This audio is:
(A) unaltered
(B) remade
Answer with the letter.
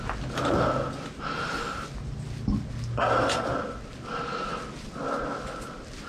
A